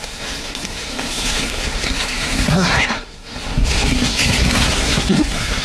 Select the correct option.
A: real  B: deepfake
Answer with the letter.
B